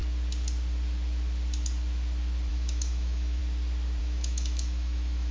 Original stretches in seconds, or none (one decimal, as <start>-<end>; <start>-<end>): 0.0-2.5; 3.4-4.0